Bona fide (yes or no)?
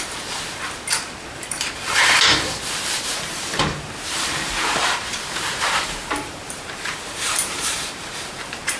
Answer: no